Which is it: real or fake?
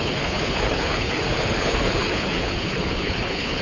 fake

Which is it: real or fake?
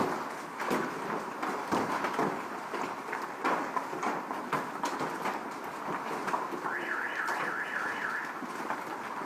real